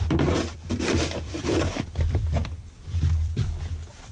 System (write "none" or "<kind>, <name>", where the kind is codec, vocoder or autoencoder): vocoder, BigVGAN v2